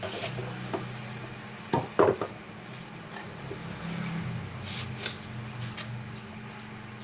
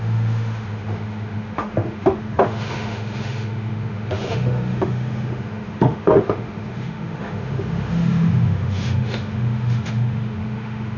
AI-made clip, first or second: second